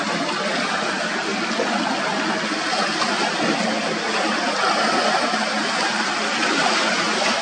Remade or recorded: recorded